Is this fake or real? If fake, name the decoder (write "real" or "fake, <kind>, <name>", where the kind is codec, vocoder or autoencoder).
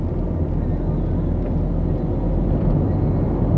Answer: real